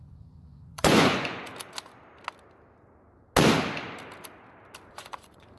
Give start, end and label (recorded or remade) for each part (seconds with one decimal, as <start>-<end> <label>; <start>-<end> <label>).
0.0-1.5 remade; 1.5-4.9 recorded; 4.9-5.6 remade